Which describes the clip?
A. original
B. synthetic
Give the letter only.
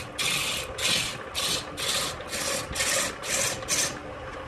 A